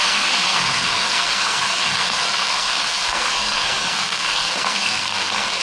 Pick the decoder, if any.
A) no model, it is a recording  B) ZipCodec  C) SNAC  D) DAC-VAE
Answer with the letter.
C